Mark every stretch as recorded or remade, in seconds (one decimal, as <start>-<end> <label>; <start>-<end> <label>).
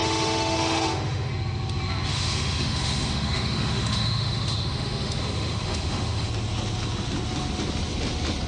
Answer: 0.0-1.3 remade; 1.3-2.1 recorded; 2.1-6.3 remade; 6.3-8.5 recorded